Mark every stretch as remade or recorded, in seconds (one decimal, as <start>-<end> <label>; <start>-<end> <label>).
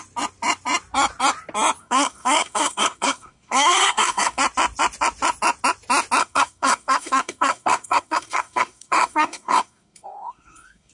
0.0-1.8 recorded; 1.8-4.4 remade; 4.4-6.2 recorded; 6.2-10.9 remade